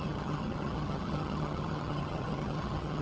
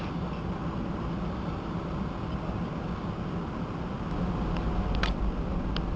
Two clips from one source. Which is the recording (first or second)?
second